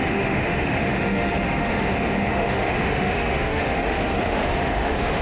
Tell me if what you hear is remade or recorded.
remade